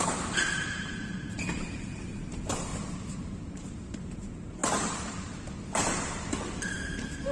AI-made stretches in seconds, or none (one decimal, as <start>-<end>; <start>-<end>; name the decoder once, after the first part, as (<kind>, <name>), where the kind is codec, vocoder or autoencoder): 0.0-2.7 (vocoder, BigVGAN v2); 3.8-4.6